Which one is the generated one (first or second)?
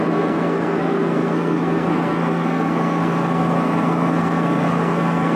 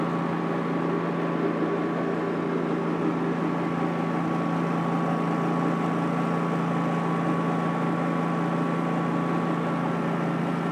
first